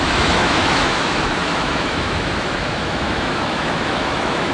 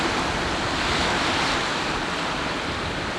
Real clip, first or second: second